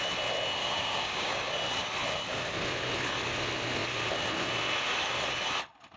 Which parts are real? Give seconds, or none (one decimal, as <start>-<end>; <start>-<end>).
0.0-0.6; 1.4-6.0

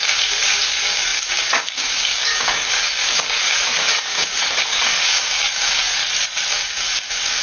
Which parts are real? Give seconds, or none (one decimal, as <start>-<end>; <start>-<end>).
6.0-6.5